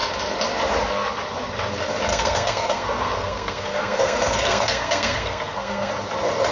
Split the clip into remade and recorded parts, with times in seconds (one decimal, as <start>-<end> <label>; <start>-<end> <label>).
0.0-2.1 recorded; 2.1-5.9 remade; 5.9-6.5 recorded